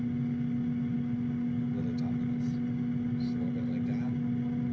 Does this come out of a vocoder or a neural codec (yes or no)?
no